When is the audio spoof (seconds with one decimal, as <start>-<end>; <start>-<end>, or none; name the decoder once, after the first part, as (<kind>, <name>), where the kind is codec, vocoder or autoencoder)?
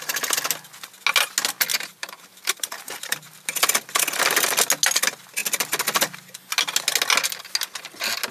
1.7-3.3 (vocoder, BigVGAN v2)